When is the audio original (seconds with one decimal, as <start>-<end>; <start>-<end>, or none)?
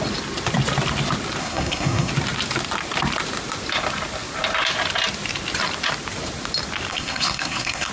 0.0-1.4; 2.1-6.9